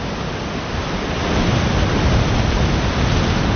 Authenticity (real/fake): real